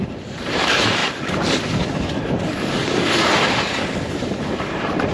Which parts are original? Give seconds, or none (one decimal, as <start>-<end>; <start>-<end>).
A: 1.0-4.1